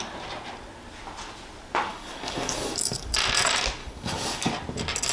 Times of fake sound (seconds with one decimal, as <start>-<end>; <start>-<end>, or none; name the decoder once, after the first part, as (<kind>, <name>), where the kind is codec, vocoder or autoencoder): 1.9-3.1 (codec, DAC); 3.8-4.5